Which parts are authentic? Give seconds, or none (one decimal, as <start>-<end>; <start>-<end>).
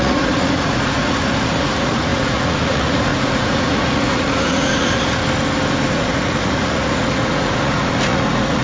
5.2-5.9